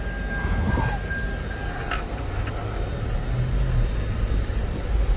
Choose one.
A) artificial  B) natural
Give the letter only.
B